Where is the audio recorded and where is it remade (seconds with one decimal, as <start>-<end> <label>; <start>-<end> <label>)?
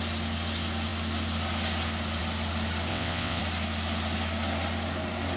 0.0-2.9 recorded; 2.9-3.4 remade; 3.4-5.4 recorded